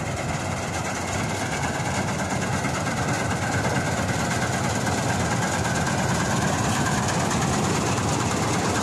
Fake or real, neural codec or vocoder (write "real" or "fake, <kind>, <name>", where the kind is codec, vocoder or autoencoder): real